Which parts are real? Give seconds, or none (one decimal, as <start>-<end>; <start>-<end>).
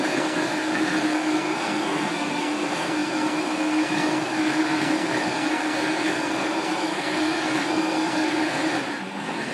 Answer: 8.6-9.1